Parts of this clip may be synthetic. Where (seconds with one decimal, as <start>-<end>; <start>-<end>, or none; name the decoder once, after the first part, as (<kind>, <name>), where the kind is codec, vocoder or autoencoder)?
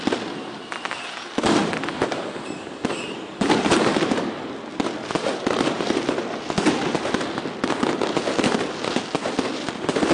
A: 5.2-6.0 (vocoder, BigVGAN v2)